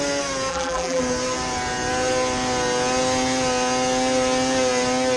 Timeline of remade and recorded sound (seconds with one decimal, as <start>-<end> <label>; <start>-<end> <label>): 0.0-0.5 recorded; 0.5-1.0 remade; 1.0-5.2 recorded